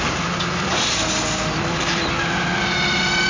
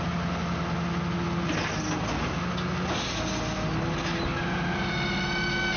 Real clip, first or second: second